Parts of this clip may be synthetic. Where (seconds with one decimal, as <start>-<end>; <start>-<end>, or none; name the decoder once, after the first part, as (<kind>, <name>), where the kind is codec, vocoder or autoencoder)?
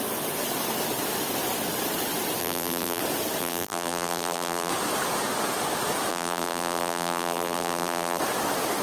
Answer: 2.4-3.0 (vocoder, BigVGAN v2); 3.4-4.7; 6.1-8.2